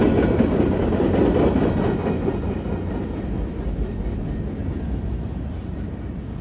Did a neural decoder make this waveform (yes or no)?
no